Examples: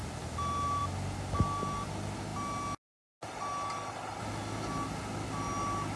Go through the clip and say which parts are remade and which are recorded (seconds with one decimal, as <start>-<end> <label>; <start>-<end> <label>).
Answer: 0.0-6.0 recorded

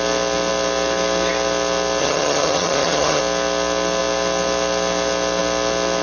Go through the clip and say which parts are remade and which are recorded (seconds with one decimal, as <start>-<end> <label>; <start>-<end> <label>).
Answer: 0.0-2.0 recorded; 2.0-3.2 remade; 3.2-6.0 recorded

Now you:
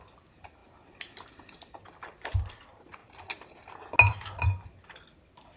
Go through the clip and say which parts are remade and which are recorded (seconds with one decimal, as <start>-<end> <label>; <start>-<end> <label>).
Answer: 0.0-5.6 recorded